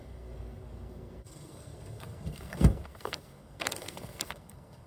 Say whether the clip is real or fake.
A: fake